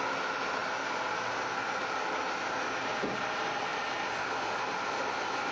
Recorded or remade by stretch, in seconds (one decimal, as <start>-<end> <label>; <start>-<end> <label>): 0.0-5.5 recorded